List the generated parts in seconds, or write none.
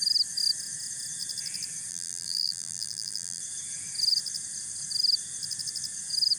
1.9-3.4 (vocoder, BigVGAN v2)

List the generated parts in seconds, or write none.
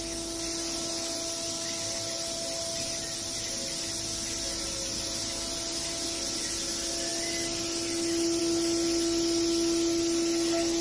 none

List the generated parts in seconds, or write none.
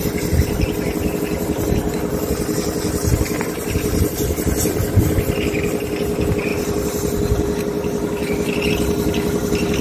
none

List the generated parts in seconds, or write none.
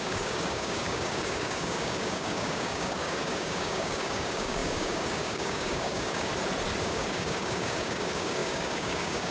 0.0-6.3 (codec, DAC); 6.8-9.3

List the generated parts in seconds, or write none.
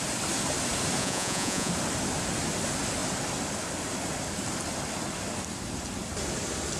1.0-1.7 (vocoder, Vocos)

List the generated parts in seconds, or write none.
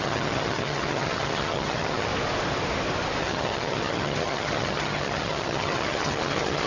0.0-2.1 (vocoder, HiFi-GAN); 3.2-6.7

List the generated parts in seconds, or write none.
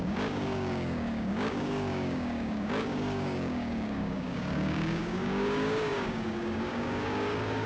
0.0-7.7 (codec, DAC)